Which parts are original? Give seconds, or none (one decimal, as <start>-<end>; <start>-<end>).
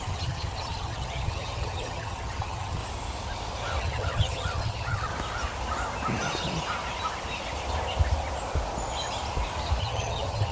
2.8-3.8; 5.1-9.8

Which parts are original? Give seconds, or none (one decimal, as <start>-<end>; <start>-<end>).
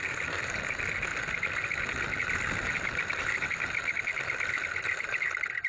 0.0-5.7